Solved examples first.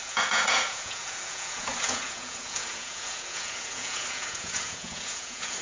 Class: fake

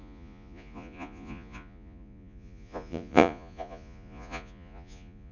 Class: fake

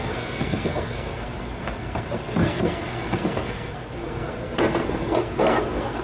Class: fake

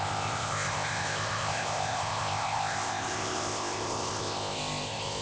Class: fake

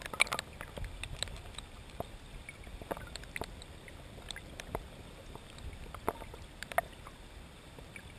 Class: real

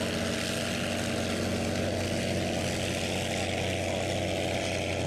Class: real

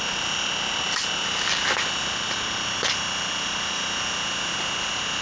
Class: real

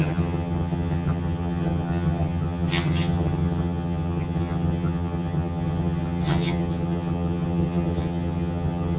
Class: fake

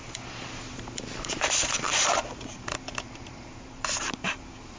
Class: fake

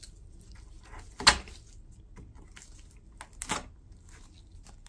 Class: real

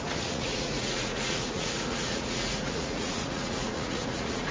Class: fake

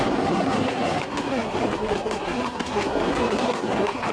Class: fake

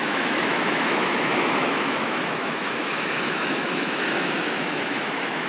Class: fake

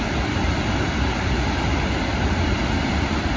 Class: real